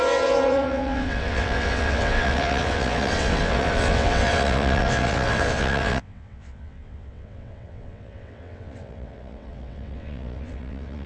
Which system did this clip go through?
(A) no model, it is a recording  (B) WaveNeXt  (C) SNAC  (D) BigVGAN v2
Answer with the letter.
B